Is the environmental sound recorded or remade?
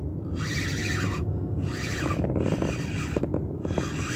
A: recorded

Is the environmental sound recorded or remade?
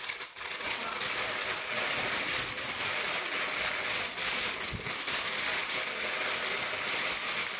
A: recorded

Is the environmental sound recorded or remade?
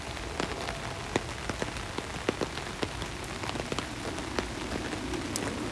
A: recorded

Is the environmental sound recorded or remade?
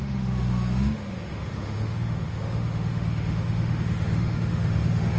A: remade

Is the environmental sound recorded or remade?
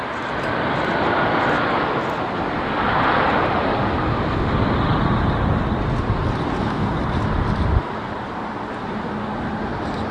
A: recorded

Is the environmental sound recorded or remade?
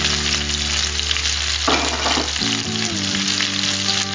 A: recorded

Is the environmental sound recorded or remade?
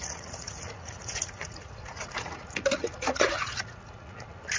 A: remade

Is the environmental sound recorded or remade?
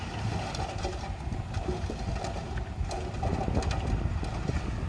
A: recorded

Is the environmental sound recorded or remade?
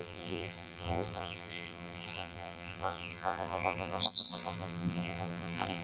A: remade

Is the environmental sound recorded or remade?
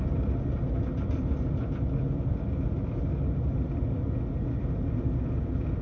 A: recorded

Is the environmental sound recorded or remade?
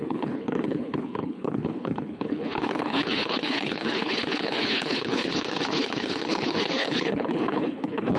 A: remade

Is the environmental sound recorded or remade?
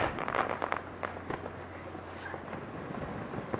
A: recorded